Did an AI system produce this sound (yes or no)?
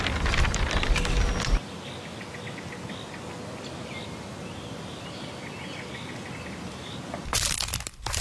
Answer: no